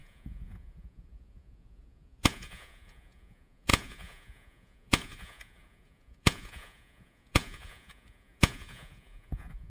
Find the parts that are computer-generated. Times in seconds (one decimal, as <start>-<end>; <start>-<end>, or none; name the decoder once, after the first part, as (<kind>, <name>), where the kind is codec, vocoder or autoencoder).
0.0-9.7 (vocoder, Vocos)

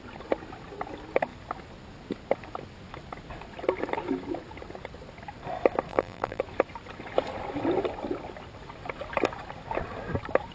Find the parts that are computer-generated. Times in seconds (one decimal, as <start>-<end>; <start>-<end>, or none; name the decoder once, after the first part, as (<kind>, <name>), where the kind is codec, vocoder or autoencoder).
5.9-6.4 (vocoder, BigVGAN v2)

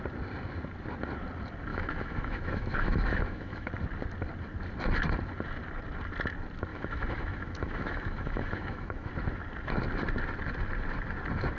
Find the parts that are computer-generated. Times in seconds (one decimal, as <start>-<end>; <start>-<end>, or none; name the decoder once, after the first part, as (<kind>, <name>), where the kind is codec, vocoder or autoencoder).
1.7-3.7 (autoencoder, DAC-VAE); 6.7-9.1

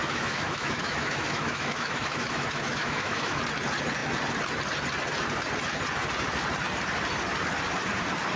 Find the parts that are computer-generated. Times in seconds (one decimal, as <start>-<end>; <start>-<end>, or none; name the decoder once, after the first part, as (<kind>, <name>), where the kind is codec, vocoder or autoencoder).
0.0-3.4 (autoencoder, DAC-VAE)

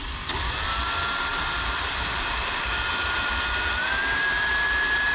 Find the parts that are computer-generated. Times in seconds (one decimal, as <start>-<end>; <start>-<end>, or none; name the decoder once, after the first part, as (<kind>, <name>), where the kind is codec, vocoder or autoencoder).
0.0-0.8 (vocoder, BigVGAN v2); 1.3-4.4

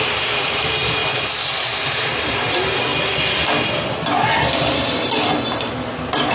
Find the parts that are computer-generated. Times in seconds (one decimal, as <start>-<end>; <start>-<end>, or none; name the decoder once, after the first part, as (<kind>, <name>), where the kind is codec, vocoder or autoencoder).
0.0-1.0 (vocoder, BigVGAN v2); 1.7-2.9

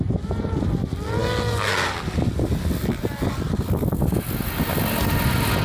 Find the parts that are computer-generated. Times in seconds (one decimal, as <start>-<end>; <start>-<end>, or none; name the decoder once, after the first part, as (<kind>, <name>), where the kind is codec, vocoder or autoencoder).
none

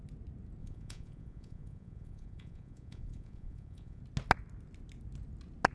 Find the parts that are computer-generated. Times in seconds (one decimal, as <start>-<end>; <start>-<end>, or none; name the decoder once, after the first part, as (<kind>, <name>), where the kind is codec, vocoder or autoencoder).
0.6-4.0 (vocoder, Vocos)